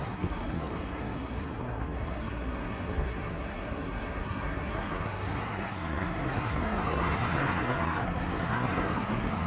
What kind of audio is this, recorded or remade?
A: remade